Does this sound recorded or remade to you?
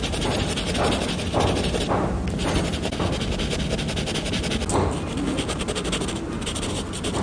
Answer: recorded